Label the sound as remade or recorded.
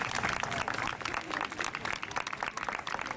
recorded